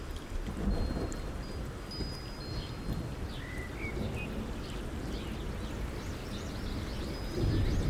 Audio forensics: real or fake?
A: real